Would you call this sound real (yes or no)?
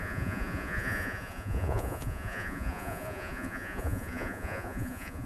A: no